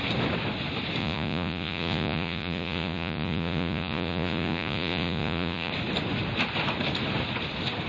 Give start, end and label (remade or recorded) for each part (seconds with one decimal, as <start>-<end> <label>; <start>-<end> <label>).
0.0-1.0 recorded; 1.0-5.7 remade; 5.7-7.9 recorded